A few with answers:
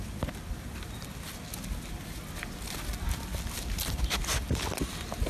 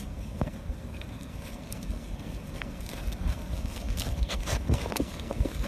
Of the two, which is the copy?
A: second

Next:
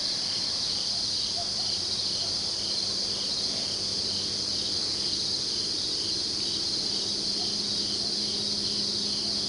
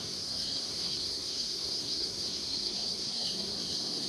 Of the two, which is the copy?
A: second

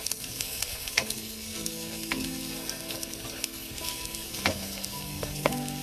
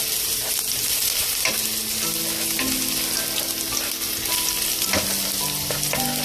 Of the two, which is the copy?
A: first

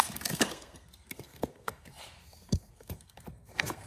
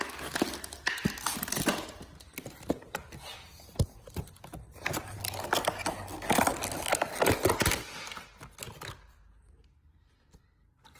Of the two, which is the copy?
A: first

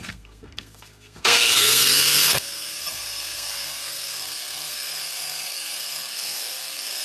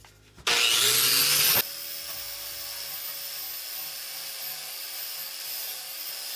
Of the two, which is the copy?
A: first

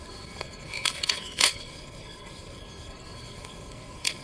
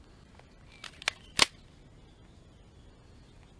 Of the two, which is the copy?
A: first